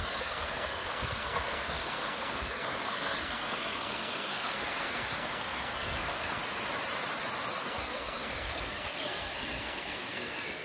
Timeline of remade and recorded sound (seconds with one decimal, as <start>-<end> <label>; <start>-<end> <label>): 0.0-6.4 remade; 6.4-7.6 recorded; 7.6-10.6 remade